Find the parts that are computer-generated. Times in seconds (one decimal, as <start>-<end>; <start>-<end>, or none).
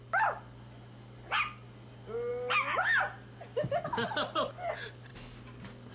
none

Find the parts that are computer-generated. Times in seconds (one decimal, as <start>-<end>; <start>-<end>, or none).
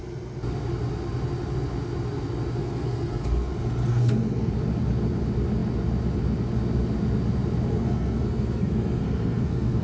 2.6-3.5; 3.9-4.5; 7.7-9.8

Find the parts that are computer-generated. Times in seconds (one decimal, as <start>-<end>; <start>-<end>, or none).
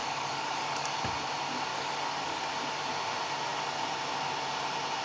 0.0-1.0; 1.7-2.4